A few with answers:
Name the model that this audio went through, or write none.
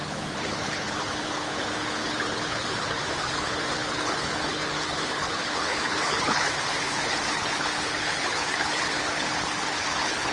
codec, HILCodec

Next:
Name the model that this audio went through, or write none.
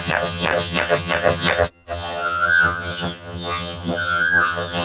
vocoder, HiFi-GAN